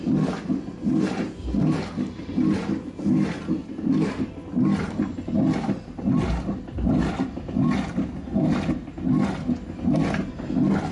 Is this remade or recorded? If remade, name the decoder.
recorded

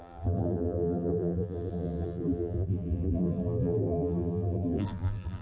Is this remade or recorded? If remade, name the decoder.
remade, vocoder, BigVGAN v2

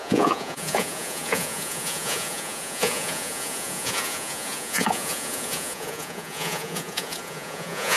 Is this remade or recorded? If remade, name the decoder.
remade, vocoder, Vocos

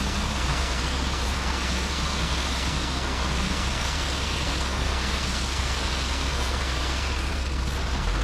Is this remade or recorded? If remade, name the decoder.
remade, codec, SNAC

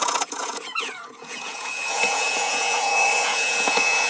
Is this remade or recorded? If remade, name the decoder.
remade, vocoder, Vocos